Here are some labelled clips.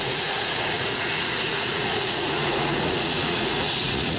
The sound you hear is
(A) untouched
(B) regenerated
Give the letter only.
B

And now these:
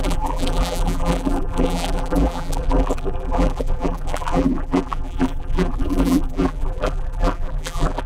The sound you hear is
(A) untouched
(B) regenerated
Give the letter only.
B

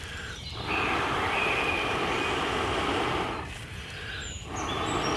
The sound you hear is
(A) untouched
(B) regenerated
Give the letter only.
A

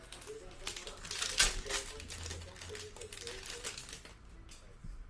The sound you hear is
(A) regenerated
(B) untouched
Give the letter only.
B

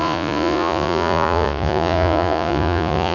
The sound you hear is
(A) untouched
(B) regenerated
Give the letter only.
B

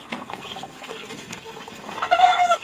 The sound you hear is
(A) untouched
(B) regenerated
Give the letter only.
B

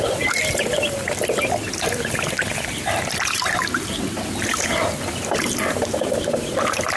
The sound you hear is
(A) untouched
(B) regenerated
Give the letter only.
B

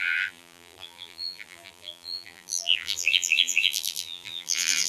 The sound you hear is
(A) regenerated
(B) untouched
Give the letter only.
A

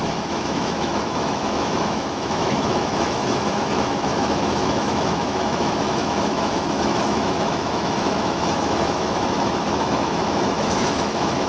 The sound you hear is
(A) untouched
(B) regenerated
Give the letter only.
B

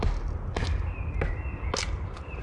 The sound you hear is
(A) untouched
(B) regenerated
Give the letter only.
A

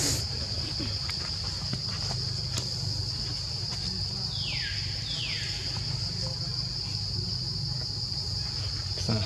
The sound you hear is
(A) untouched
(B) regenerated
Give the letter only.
A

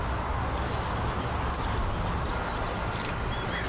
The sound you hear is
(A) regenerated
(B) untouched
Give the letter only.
B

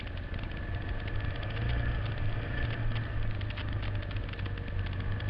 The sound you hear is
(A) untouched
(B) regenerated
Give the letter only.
A